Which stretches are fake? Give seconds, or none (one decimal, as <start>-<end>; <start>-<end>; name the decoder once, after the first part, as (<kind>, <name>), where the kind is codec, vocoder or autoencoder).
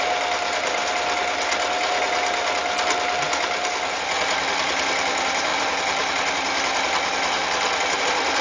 none